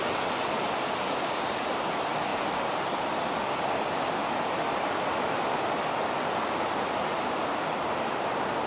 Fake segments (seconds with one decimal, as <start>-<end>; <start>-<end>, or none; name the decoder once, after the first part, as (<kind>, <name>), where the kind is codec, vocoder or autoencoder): none